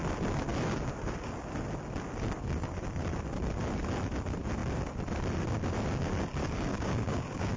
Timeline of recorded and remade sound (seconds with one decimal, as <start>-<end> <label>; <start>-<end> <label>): 0.0-6.4 recorded; 6.4-7.6 remade